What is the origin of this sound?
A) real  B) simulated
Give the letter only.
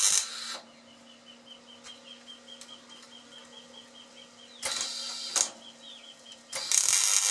A